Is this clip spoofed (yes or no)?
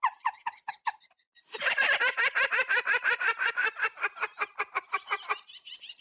no